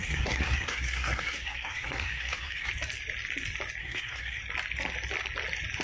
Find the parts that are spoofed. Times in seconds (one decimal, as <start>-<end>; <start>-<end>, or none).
0.0-2.7; 3.8-4.4